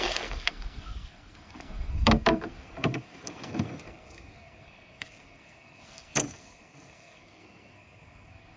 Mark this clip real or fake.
fake